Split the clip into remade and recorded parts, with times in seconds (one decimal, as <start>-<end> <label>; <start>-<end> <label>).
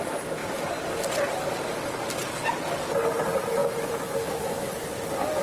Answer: 0.0-3.6 recorded; 3.6-4.7 remade; 4.7-5.4 recorded